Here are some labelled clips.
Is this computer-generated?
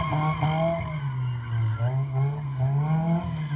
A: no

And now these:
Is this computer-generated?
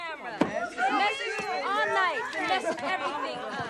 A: no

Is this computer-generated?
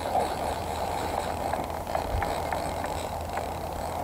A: yes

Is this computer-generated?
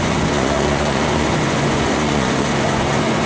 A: yes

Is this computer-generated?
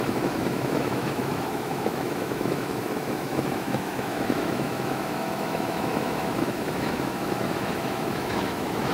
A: yes